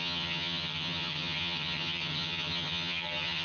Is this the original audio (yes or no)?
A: no